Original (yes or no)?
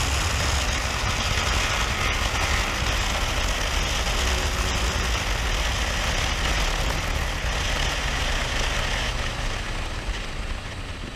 yes